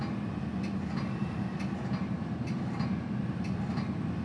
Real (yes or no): yes